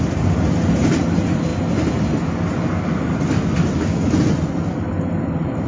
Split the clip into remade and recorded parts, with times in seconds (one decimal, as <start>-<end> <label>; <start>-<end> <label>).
0.0-5.7 recorded